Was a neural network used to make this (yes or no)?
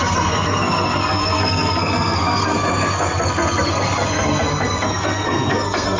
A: yes